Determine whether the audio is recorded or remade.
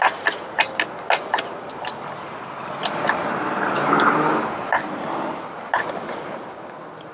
recorded